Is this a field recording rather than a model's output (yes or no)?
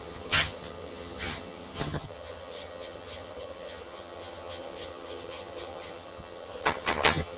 no